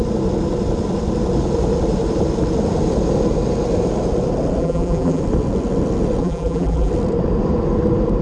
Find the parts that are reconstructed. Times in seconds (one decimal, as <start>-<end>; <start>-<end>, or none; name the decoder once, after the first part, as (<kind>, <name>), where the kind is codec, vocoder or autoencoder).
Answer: 4.6-5.2 (vocoder, BigVGAN v2); 6.2-6.9